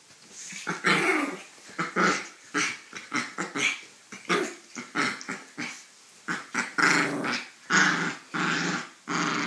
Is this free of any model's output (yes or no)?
yes